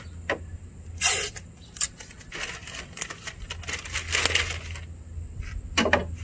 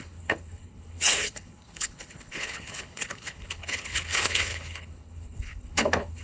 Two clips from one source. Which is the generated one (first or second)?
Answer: second